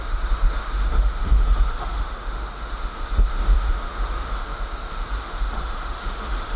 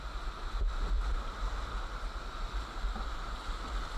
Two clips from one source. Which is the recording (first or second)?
second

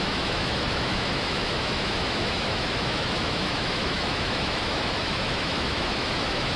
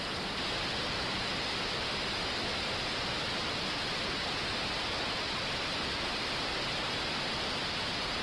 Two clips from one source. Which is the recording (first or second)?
second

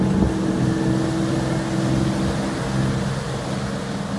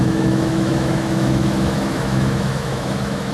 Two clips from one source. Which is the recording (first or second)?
first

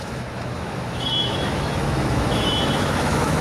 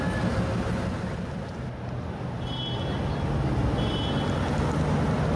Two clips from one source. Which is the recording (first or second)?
second